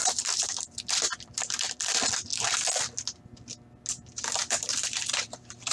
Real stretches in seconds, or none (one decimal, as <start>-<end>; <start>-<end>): 2.3-3.9